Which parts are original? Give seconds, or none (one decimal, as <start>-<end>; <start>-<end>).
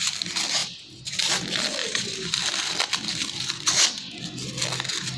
0.0-0.6; 1.3-1.8; 2.6-3.1; 3.7-5.2